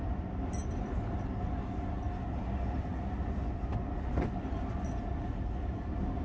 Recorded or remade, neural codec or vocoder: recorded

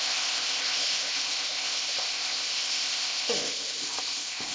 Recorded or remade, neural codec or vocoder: remade, codec, ZipCodec